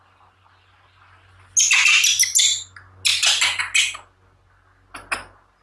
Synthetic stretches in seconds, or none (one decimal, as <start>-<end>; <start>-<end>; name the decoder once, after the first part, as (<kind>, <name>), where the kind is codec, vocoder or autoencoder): none

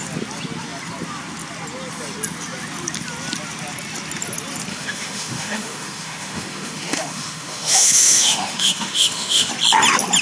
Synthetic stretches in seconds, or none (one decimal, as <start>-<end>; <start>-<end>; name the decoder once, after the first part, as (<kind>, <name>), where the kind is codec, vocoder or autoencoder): 4.7-9.5 (autoencoder, DAC-VAE)

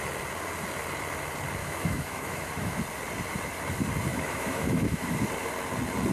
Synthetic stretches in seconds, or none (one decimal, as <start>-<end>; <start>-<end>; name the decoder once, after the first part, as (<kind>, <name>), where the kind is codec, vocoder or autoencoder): 1.6-2.8 (autoencoder, DAC-VAE); 4.1-5.3

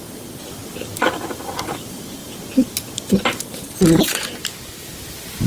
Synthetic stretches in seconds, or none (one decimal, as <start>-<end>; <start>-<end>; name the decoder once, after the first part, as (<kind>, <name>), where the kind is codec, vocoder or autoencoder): none

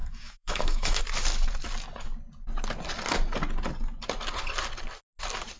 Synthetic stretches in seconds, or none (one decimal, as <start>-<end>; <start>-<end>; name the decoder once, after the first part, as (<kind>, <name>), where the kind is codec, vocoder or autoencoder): 0.0-1.0 (autoencoder, DAC-VAE)

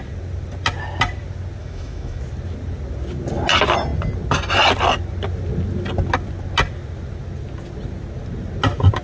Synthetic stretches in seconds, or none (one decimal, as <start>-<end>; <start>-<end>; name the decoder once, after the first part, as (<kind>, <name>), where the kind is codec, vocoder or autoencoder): 1.6-2.2 (autoencoder, DAC-VAE)